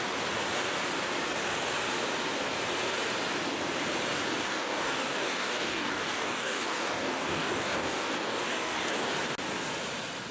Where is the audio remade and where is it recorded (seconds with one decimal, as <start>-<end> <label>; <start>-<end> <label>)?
0.0-4.4 recorded; 4.4-9.1 remade; 9.1-10.3 recorded